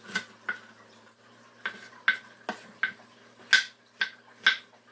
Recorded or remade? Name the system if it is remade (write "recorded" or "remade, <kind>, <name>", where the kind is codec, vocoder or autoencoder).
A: recorded